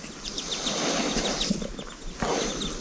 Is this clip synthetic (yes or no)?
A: no